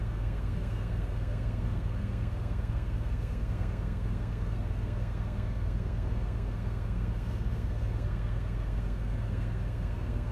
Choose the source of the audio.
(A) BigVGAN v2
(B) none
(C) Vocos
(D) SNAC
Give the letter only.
D